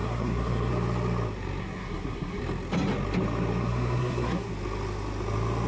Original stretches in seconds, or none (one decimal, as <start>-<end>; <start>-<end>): 0.7-1.6; 2.4-3.6; 4.5-5.7

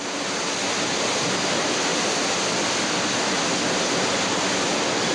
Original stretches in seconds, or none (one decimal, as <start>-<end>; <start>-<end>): 0.0-1.9; 2.7-5.1